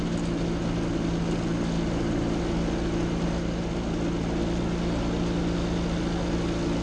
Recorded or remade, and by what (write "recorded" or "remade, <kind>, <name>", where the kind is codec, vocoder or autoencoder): recorded